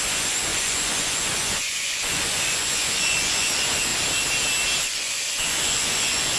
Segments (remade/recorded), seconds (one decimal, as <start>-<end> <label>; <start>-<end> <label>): 0.0-3.9 remade; 3.9-4.8 recorded; 4.8-6.4 remade